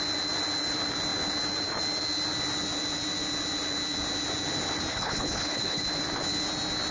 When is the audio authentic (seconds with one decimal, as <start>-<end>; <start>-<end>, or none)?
0.0-4.9; 5.8-6.9